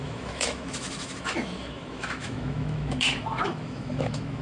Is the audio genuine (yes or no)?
no